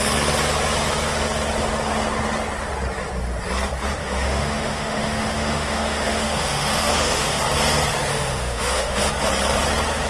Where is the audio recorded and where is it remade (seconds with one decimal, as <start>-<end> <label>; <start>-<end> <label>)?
0.0-4.0 recorded; 4.0-7.4 remade; 7.4-8.1 recorded; 8.1-9.1 remade; 9.1-10.1 recorded